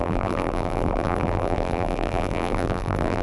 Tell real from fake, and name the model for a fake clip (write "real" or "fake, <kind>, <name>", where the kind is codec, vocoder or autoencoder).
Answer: fake, vocoder, BigVGAN v2